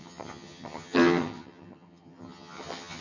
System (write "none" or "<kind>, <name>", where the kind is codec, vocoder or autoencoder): vocoder, HiFi-GAN